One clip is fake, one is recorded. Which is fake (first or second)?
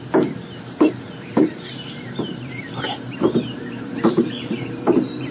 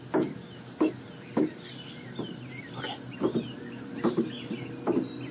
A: first